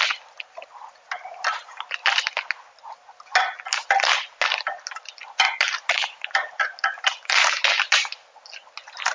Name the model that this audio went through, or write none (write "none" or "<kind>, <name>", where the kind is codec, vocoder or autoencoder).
none